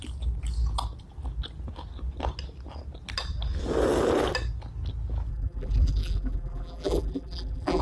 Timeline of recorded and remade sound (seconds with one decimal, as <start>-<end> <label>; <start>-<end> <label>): 0.0-5.3 recorded; 5.3-7.8 remade